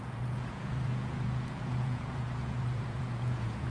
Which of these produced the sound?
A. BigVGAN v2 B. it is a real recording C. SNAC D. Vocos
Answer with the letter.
D